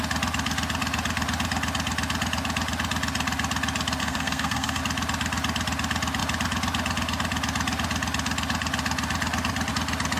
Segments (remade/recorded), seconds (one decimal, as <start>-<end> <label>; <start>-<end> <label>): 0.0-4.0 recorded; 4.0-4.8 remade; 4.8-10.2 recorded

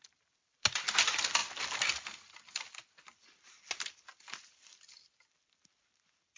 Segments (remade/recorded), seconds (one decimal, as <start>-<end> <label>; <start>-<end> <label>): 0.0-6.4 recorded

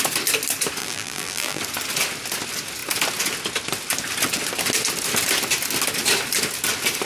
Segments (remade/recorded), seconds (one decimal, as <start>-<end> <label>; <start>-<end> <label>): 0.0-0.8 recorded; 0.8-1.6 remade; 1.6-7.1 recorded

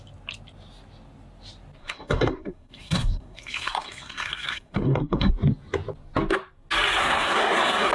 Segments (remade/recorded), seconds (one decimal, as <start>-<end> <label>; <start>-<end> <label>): 0.0-1.8 recorded; 1.8-5.3 remade; 5.3-7.0 recorded; 7.0-7.9 remade

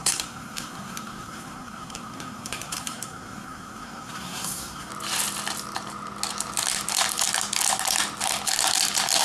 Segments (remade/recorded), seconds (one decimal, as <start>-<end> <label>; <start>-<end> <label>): 0.0-4.9 remade; 4.9-9.2 recorded

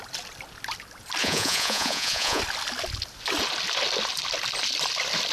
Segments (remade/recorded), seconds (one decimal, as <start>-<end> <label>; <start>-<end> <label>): 0.0-1.2 recorded; 1.2-2.4 remade; 2.4-5.3 recorded

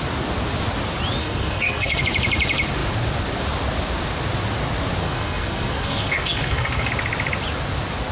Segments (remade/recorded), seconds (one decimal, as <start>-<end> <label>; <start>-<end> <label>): 0.0-1.2 recorded; 1.2-2.0 remade; 2.0-5.0 recorded; 5.0-6.9 remade; 6.9-8.1 recorded